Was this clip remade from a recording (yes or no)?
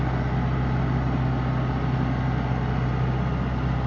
no